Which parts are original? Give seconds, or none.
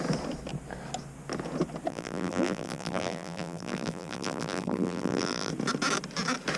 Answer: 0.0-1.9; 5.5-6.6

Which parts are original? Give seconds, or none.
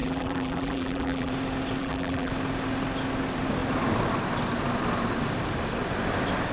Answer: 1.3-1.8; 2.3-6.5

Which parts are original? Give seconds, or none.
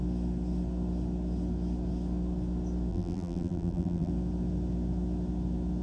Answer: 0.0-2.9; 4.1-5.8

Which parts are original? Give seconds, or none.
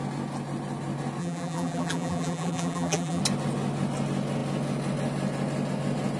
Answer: 0.0-1.2; 3.2-6.2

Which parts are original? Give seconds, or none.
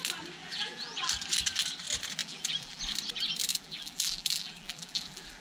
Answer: 0.0-0.4; 1.1-2.2; 2.8-3.5